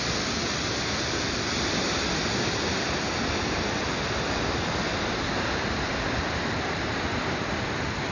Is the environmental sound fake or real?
real